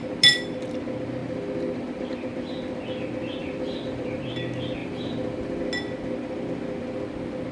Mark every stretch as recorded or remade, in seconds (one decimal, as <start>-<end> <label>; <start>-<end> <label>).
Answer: 0.0-1.2 recorded; 1.2-2.1 remade; 2.1-3.4 recorded; 3.4-4.3 remade; 4.3-4.8 recorded; 4.8-5.6 remade; 5.6-7.5 recorded